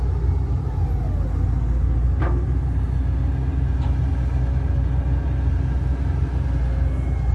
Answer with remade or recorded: recorded